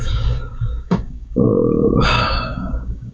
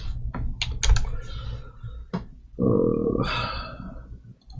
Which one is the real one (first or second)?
second